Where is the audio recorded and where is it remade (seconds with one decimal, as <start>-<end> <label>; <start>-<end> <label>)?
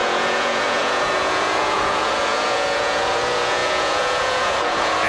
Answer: 0.0-5.1 remade